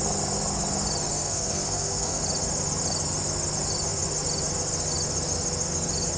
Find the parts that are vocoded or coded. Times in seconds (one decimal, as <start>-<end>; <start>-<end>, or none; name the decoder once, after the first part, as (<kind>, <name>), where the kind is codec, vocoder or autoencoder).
1.1-2.2 (codec, SNAC)